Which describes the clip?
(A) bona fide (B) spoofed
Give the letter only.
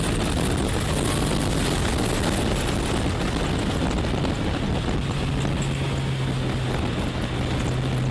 A